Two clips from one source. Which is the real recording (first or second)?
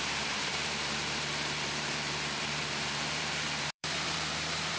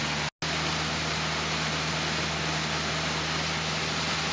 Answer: second